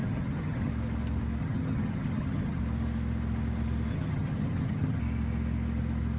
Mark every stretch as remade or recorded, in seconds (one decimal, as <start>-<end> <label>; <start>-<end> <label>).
0.0-0.7 remade; 0.7-1.4 recorded; 1.4-2.6 remade; 2.6-3.9 recorded; 3.9-5.0 remade; 5.0-6.2 recorded